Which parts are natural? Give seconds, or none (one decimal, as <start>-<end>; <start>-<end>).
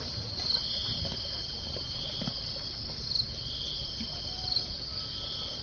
0.0-5.6